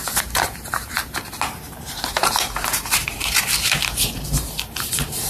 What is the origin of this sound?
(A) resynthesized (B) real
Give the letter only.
A